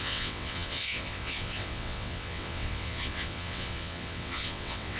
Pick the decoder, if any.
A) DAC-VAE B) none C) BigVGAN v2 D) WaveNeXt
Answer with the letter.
D